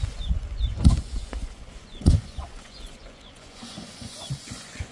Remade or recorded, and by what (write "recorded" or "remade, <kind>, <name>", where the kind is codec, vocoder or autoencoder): remade, vocoder, Vocos